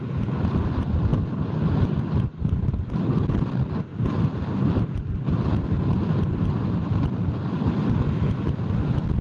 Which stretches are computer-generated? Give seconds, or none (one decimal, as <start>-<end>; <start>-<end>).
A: none

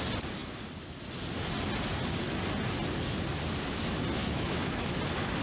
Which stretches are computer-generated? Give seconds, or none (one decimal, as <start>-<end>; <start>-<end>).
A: 4.2-4.9

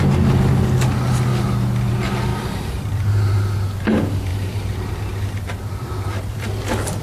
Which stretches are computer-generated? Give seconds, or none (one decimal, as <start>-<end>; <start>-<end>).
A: 2.3-3.3; 4.3-6.5

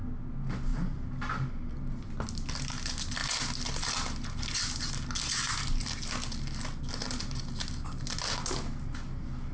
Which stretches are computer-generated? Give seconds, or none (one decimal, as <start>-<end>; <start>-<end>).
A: none